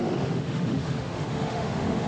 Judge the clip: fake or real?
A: fake